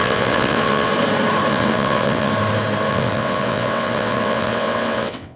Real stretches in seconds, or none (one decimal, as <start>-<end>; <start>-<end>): 0.9-1.5; 2.3-2.9